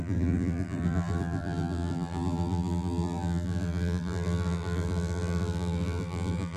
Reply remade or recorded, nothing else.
remade